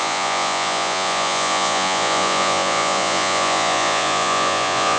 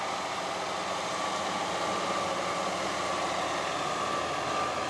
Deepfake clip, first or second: first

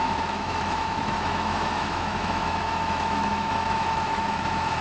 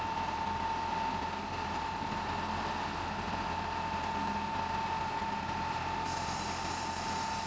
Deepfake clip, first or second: first